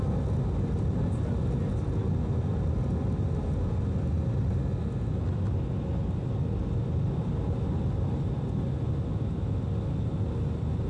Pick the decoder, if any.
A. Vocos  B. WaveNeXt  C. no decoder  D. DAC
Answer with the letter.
C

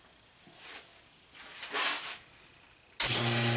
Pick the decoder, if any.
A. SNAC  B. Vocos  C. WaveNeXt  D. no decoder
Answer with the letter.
D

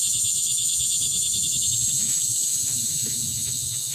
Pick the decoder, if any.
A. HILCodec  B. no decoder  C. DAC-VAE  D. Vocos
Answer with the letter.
C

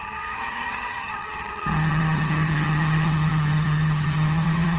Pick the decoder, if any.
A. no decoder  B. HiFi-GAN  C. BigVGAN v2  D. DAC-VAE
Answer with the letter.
B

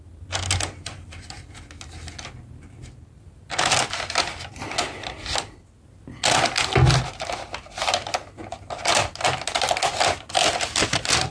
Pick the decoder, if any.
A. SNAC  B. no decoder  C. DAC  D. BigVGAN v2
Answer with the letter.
B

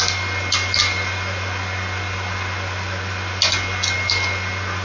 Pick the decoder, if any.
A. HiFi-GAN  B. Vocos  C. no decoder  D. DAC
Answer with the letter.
C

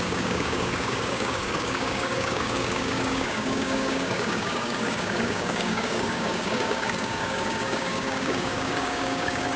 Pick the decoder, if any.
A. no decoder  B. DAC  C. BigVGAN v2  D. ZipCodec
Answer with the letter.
B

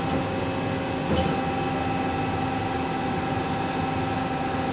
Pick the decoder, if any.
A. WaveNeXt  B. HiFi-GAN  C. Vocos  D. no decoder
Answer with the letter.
D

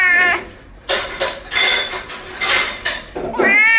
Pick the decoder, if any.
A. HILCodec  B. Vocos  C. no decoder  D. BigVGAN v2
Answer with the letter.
C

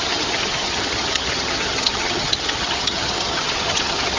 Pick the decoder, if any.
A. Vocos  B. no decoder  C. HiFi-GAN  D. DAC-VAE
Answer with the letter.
C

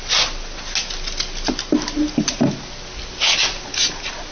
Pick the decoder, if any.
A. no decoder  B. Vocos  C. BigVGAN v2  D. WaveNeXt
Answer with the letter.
A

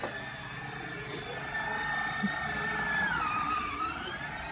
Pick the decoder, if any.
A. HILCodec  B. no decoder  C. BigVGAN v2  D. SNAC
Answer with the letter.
B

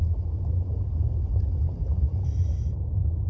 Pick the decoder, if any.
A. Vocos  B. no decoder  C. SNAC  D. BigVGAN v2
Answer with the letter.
D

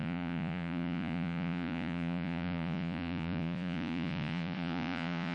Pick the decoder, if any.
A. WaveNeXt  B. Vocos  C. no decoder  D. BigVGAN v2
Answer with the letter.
B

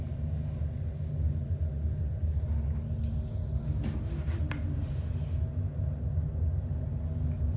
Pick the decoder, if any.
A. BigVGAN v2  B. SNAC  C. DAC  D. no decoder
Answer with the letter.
D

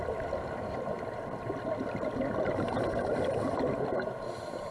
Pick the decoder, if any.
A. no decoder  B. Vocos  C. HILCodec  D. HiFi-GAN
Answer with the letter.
A